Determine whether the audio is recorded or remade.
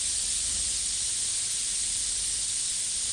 recorded